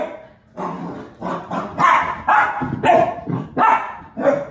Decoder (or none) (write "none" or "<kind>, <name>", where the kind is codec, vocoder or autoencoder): none